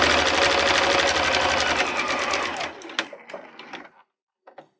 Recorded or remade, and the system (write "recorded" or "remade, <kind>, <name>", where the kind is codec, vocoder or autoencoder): recorded